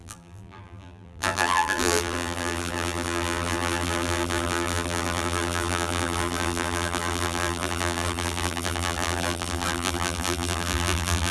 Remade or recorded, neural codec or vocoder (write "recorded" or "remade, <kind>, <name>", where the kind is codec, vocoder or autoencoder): remade, vocoder, BigVGAN v2